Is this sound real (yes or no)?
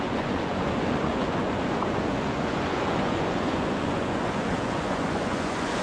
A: no